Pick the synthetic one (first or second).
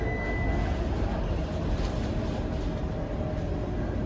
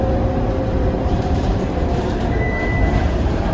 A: second